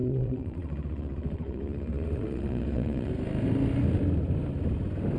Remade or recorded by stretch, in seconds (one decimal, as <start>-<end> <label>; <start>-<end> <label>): 0.0-3.1 remade; 3.1-5.2 recorded